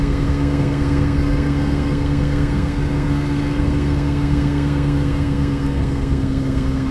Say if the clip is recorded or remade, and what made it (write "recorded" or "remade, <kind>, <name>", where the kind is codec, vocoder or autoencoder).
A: remade, codec, SNAC